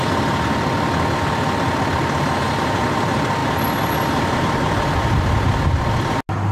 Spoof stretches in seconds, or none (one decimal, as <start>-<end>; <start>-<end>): none